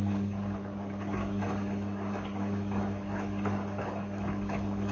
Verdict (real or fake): fake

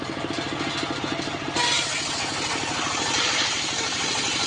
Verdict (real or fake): real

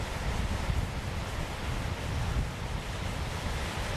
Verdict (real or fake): fake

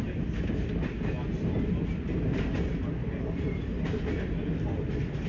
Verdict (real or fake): real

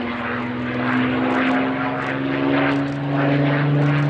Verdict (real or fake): real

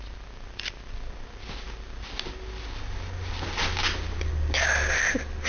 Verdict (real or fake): real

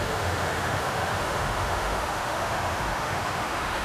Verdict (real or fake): fake